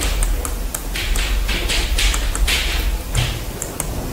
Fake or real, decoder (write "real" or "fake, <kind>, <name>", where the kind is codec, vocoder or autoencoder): real